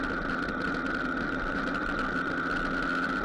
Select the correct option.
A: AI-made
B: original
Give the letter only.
B